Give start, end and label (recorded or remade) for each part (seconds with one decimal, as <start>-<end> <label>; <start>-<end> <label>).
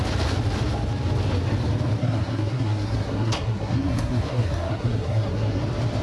0.0-2.0 recorded; 2.0-5.6 remade; 5.6-6.0 recorded